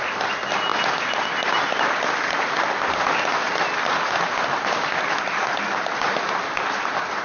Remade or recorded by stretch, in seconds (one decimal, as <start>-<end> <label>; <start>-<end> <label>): 0.0-7.2 recorded